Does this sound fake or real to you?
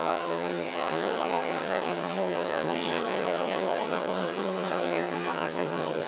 fake